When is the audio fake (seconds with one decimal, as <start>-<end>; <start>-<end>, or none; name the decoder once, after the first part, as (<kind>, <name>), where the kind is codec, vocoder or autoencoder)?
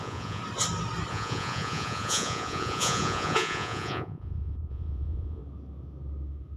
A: 0.0-0.4 (vocoder, Vocos); 1.1-5.4